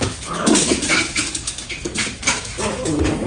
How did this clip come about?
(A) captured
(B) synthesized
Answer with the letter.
B